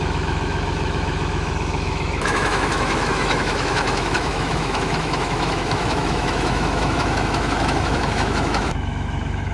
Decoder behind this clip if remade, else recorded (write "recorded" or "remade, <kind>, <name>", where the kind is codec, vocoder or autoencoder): remade, autoencoder, DAC-VAE